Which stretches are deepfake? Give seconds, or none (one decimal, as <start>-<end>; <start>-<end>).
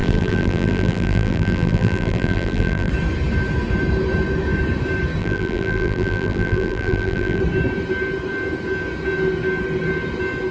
0.0-2.9; 5.2-7.4